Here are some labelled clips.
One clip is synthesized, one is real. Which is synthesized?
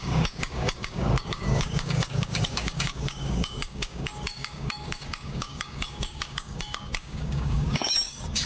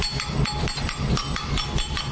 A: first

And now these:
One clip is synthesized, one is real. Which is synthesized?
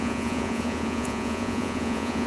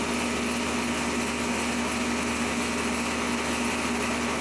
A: first